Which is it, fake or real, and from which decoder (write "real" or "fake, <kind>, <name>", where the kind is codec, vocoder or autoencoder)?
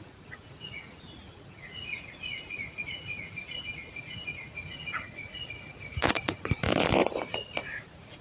fake, vocoder, Vocos